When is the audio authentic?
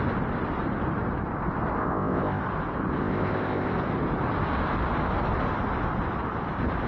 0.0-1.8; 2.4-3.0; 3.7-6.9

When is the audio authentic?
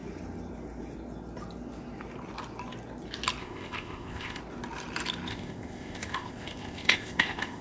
0.0-3.4; 4.4-5.3